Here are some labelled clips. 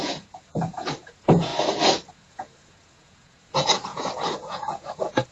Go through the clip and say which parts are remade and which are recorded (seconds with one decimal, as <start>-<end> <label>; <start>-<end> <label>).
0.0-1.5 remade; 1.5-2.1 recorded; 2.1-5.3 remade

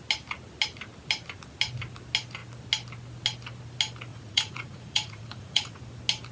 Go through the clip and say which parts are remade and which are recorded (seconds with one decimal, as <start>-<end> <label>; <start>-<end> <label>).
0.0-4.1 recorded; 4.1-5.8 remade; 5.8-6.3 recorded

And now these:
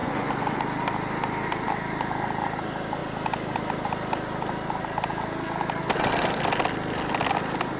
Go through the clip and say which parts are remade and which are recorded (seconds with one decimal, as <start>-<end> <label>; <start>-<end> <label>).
0.0-0.6 remade; 0.6-7.8 recorded

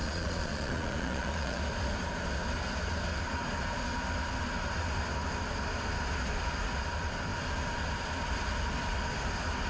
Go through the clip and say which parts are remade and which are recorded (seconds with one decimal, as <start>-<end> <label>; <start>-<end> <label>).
0.0-1.6 remade; 1.6-9.7 recorded

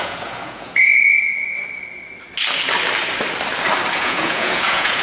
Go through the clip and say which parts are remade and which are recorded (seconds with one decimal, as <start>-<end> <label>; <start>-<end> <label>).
0.0-0.9 remade; 0.9-3.9 recorded; 3.9-5.0 remade

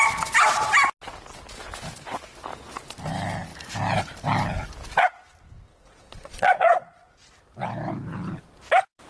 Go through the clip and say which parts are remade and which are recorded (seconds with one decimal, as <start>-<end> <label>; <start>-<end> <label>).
0.0-5.7 recorded; 5.7-7.1 remade; 7.1-9.1 recorded